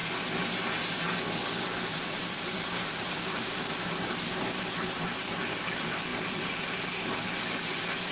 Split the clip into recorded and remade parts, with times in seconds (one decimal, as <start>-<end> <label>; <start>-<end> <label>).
0.0-1.9 recorded; 1.9-8.1 remade